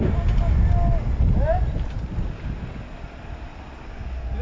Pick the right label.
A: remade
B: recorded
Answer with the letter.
B